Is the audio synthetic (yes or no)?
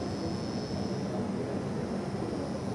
no